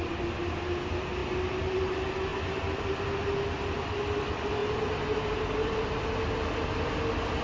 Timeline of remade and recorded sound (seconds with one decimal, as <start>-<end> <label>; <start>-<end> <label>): 0.0-4.6 recorded; 4.6-5.3 remade; 5.3-7.4 recorded